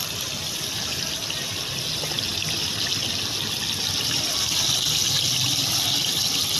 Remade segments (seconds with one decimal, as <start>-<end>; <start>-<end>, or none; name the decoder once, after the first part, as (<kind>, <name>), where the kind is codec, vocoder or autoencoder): none